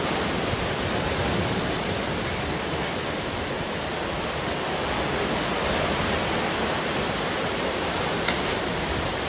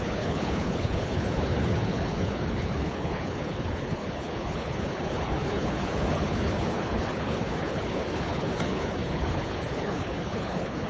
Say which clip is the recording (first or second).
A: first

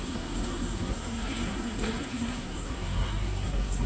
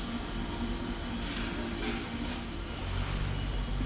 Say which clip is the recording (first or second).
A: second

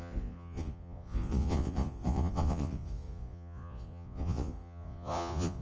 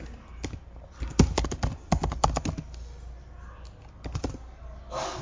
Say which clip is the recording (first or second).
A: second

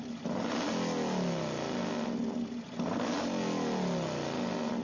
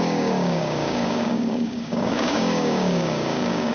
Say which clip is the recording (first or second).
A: first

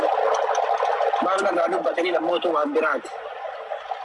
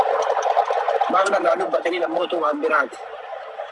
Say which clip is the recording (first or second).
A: first